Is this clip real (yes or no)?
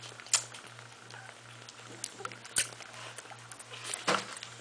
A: yes